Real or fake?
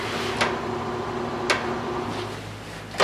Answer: real